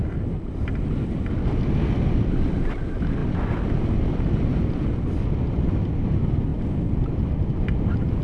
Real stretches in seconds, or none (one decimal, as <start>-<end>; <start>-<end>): 0.0-8.2

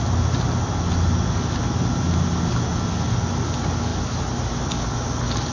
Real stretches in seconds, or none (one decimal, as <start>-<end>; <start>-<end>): 0.0-5.5